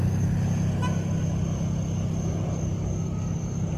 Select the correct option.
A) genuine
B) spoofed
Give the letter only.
A